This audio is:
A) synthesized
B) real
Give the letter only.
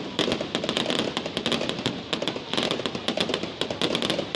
B